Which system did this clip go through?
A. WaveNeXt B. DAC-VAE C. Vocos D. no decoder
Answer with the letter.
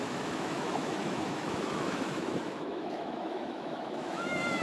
B